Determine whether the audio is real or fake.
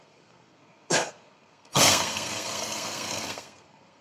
fake